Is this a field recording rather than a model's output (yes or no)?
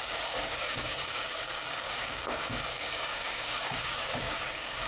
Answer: no